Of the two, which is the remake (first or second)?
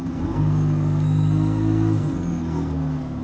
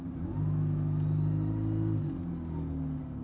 first